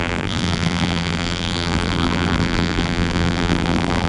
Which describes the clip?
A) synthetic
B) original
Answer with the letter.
A